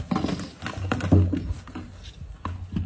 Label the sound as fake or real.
real